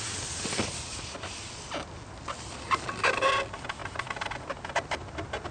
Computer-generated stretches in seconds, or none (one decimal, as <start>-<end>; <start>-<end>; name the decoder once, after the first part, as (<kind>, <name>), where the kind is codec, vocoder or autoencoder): none